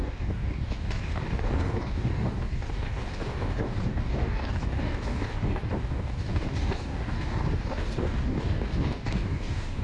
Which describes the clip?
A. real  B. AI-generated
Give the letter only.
B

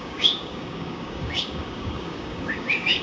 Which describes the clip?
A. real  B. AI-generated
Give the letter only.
B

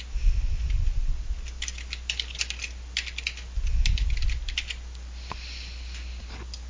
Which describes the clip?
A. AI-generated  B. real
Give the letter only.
B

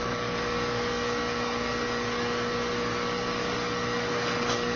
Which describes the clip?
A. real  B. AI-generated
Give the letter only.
B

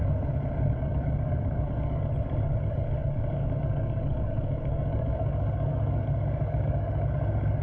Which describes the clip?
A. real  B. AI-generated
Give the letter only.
B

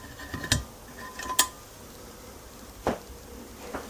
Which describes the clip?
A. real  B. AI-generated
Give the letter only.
A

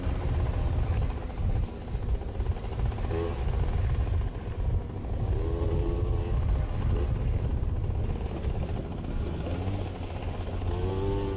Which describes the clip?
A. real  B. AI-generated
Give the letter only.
A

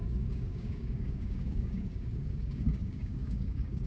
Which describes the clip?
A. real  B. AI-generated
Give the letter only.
B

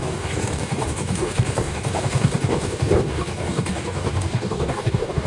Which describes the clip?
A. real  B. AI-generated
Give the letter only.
B